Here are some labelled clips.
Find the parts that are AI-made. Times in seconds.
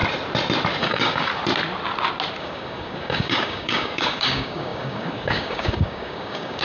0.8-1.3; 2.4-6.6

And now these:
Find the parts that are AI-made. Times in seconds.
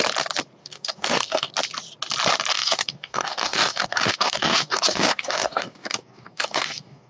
0.6-1.5; 2.5-7.1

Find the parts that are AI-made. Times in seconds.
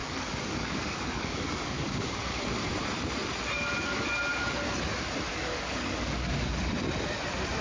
0.0-2.4; 5.3-6.6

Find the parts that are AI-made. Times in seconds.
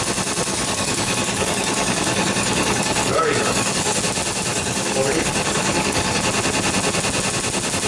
0.5-4.0; 4.5-6.2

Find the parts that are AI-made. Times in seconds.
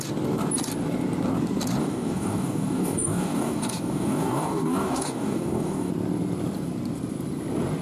1.8-5.9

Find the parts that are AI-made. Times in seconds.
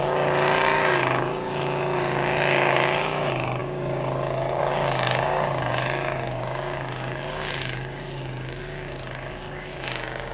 0.0-10.3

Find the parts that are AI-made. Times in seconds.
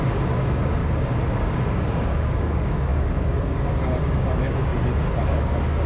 0.0-0.8; 1.3-4.7; 5.3-5.9